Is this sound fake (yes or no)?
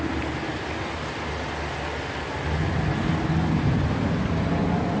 no